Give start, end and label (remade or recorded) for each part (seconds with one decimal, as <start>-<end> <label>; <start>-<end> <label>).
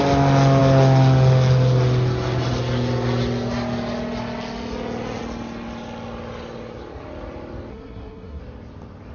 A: 0.0-7.7 recorded; 7.7-8.4 remade; 8.4-9.1 recorded